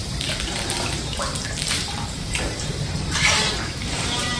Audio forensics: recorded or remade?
remade